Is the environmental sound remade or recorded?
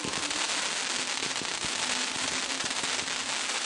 recorded